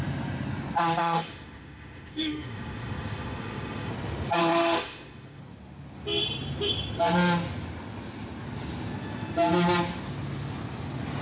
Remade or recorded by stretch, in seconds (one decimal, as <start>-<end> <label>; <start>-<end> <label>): 0.0-1.0 recorded; 1.0-3.9 remade; 3.9-4.4 recorded; 4.4-5.4 remade; 5.4-11.2 recorded